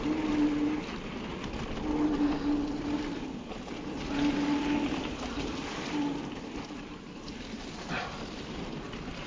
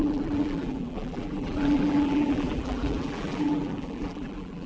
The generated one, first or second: second